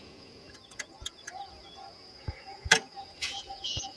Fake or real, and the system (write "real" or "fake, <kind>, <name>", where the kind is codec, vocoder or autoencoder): fake, vocoder, Vocos